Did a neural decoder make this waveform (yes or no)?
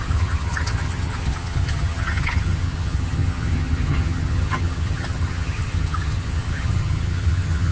yes